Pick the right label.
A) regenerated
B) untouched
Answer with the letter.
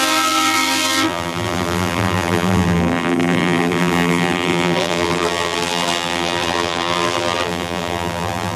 A